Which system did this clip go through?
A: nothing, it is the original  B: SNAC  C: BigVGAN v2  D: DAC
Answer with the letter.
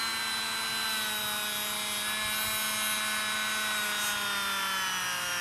A